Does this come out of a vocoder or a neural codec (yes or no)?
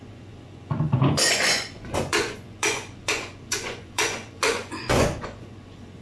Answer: yes